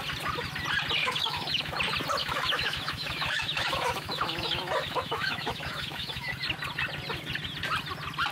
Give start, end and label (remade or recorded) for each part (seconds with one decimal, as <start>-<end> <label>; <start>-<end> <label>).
0.0-1.0 recorded; 1.0-1.8 remade; 1.8-2.2 recorded; 2.2-6.3 remade; 6.3-8.3 recorded